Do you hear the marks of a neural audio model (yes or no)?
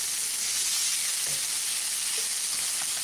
no